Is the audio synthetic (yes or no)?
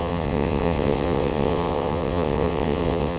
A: yes